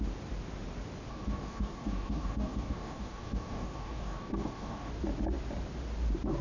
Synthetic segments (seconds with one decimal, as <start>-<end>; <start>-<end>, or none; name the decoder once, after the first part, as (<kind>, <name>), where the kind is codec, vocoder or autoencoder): 1.1-4.9 (codec, DAC)